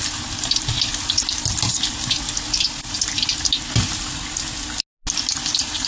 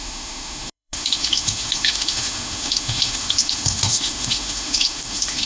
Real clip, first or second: first